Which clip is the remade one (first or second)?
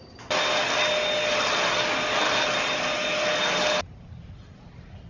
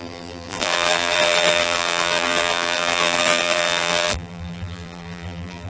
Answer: second